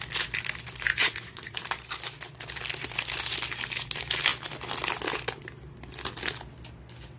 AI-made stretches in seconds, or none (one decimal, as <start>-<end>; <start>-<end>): 1.0-1.6